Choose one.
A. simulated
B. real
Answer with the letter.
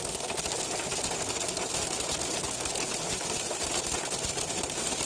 B